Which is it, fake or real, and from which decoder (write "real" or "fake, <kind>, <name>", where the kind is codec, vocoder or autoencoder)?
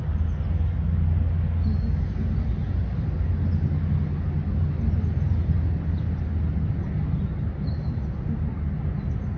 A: real